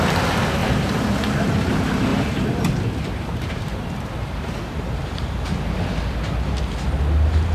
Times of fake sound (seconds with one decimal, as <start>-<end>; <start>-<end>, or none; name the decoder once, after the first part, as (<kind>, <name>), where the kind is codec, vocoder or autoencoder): 0.6-1.4 (vocoder, BigVGAN v2); 2.1-6.6